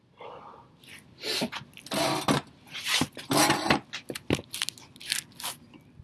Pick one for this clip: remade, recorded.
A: recorded